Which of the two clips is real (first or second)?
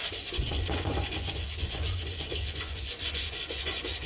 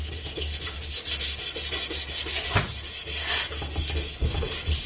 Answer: second